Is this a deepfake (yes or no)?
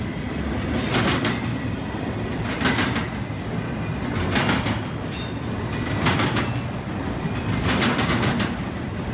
no